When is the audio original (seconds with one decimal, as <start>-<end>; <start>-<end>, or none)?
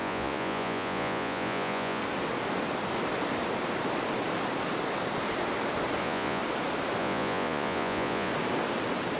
2.0-6.0; 6.4-7.0; 8.3-9.2